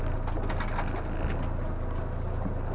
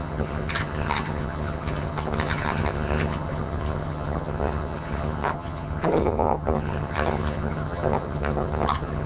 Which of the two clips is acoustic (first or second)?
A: first